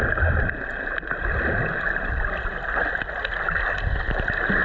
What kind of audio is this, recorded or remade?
recorded